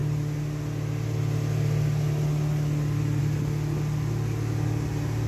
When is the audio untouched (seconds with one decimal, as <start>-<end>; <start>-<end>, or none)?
0.0-5.3